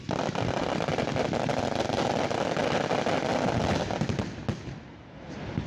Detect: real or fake real